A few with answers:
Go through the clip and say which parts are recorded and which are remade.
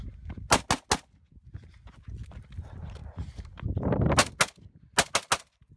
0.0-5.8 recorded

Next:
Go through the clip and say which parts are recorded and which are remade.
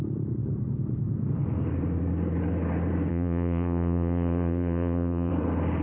0.0-3.1 recorded; 3.1-5.3 remade; 5.3-5.8 recorded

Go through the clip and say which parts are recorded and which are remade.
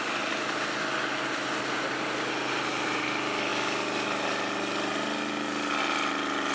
0.0-6.5 recorded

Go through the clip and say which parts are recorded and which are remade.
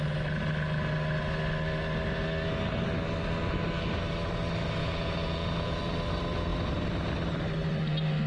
0.0-4.8 recorded; 4.8-5.8 remade; 5.8-8.3 recorded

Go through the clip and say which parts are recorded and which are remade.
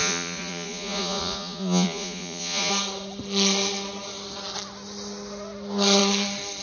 0.0-2.7 remade; 2.7-6.6 recorded